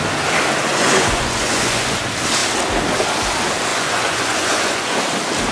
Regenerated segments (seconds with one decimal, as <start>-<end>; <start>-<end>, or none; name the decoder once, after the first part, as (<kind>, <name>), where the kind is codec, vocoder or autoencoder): 0.7-2.0 (vocoder, Vocos); 3.7-5.0